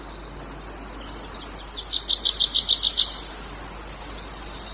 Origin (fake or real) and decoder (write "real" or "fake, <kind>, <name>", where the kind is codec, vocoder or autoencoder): real